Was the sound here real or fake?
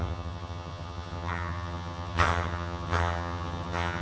fake